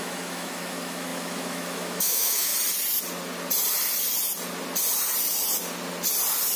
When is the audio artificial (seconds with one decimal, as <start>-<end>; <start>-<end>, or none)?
0.0-2.5